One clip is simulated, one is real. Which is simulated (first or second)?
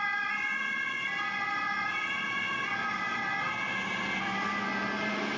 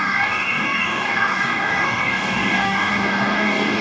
second